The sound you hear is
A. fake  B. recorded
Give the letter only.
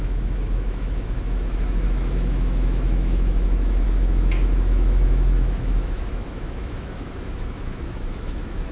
A